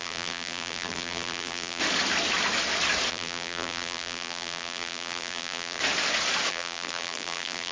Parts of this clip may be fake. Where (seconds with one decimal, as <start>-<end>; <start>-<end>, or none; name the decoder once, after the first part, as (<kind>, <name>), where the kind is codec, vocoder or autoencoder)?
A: 0.0-1.8 (vocoder, BigVGAN v2); 3.1-5.8; 6.5-7.7